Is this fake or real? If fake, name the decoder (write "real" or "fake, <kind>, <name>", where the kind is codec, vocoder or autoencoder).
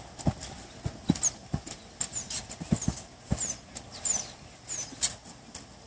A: real